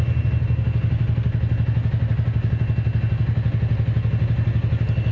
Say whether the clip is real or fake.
real